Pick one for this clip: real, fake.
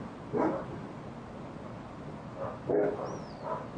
real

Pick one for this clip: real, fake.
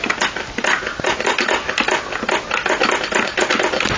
real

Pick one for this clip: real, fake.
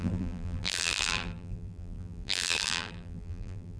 fake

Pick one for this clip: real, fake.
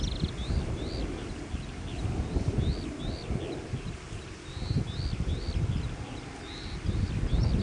real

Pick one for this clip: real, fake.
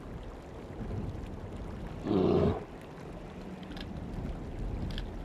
real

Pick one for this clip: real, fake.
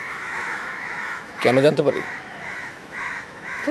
fake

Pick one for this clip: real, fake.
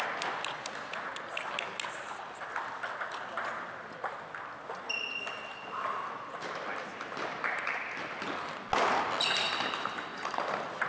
real